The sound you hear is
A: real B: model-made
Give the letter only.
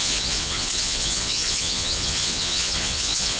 B